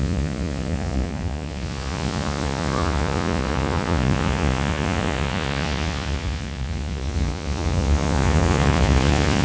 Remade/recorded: remade